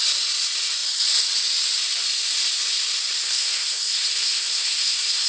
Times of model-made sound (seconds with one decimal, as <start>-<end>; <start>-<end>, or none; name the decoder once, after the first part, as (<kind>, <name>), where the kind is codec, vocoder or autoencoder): 3.2-5.3 (codec, SNAC)